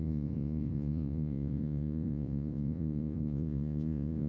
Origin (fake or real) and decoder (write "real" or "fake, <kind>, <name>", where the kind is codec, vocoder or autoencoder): fake, vocoder, Vocos